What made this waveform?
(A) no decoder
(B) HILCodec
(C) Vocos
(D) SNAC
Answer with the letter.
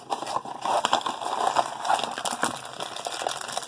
A